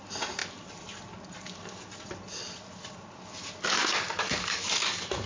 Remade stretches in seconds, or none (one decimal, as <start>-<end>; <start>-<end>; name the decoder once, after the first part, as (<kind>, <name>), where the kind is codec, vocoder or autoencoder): 3.8-5.3 (codec, DAC)